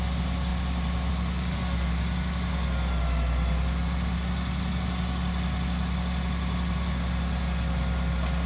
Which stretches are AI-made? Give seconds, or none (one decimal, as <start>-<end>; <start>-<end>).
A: none